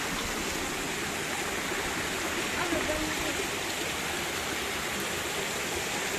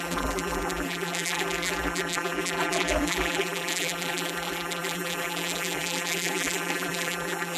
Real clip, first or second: first